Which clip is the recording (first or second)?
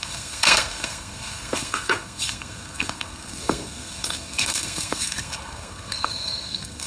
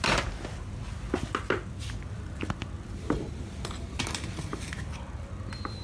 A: second